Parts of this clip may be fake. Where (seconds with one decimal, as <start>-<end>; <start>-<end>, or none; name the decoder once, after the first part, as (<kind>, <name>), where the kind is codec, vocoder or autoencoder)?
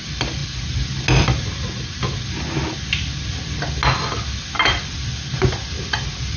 none